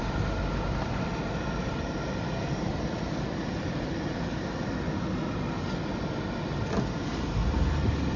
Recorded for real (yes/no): yes